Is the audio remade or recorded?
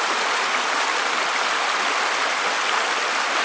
recorded